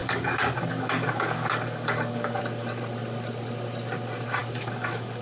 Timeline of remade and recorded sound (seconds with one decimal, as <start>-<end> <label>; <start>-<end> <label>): 0.0-2.4 remade; 2.4-4.4 recorded; 4.4-5.2 remade